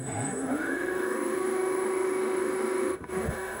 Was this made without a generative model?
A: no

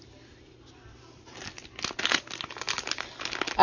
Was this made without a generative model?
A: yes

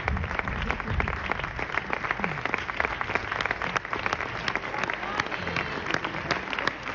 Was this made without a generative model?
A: yes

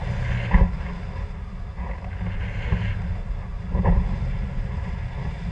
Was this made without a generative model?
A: yes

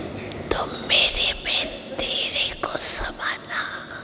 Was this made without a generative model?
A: yes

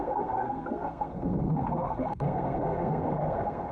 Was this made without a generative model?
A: no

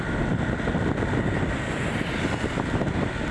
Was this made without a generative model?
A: yes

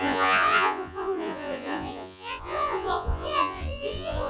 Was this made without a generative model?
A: no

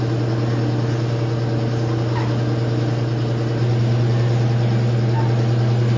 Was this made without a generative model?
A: yes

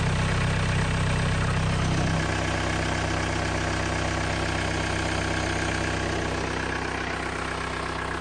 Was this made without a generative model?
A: yes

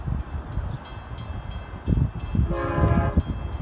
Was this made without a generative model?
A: yes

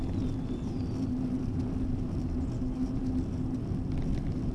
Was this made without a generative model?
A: yes